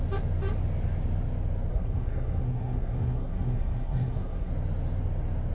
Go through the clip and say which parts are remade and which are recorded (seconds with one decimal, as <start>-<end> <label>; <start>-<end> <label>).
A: 0.0-1.7 recorded; 1.7-4.5 remade; 4.5-5.5 recorded